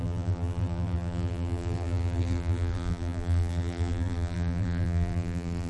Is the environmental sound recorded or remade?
remade